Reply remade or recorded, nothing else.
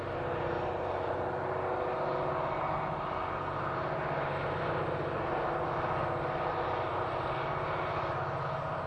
recorded